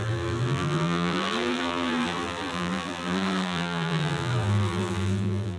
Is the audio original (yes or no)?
no